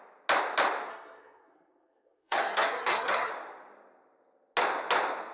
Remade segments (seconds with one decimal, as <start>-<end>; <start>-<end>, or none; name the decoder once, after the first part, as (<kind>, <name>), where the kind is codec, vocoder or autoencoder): 0.9-3.3 (codec, SNAC)